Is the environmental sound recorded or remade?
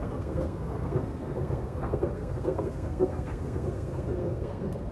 remade